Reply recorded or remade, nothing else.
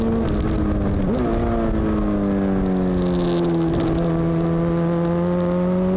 recorded